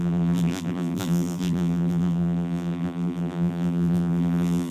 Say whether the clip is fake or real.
fake